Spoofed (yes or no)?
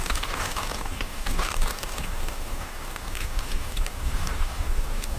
yes